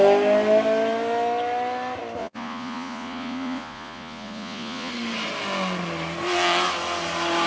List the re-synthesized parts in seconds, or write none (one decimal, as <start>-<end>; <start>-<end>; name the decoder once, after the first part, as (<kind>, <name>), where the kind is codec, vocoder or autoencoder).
2.2-4.9 (vocoder, Vocos)